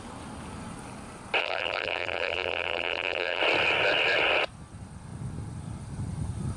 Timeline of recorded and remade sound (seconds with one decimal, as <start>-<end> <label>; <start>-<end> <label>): 0.0-1.4 recorded; 1.4-3.4 remade; 3.4-6.6 recorded